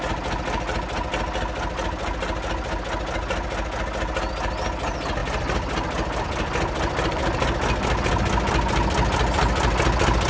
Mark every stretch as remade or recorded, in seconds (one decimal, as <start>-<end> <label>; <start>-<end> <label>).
0.0-10.3 recorded